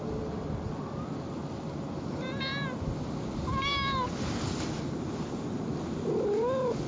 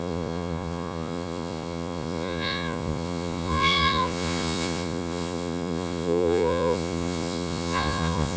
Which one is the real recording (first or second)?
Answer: first